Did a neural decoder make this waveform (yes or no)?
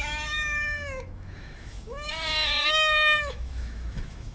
yes